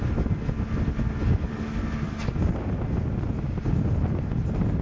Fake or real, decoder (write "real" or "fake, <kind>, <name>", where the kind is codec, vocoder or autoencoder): real